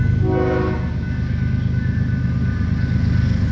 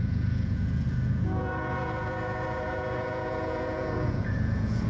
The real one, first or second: first